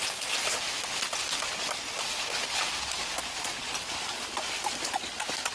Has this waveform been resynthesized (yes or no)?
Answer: no